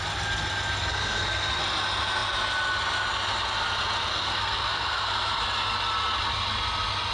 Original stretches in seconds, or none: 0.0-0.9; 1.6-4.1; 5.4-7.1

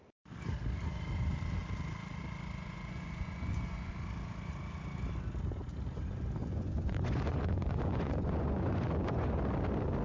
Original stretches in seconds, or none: 0.0-2.6; 3.9-6.4; 9.4-10.0

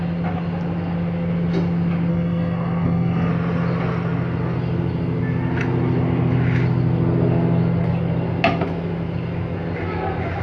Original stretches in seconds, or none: 0.0-2.1; 3.3-10.4

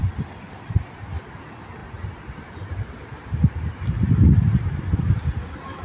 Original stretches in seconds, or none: 0.0-5.8

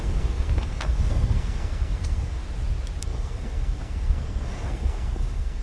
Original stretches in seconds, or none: 2.4-3.0

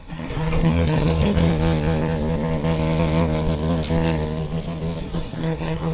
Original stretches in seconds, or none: 1.5-5.0

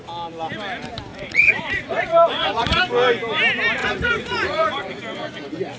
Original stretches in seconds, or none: 0.0-1.1; 2.8-3.8; 5.0-5.8